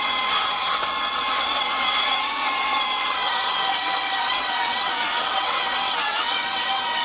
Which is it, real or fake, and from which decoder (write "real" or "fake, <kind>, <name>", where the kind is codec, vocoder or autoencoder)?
fake, vocoder, WaveNeXt